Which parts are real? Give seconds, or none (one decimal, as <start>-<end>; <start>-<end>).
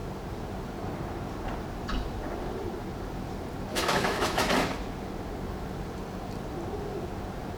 0.0-3.7; 4.5-7.6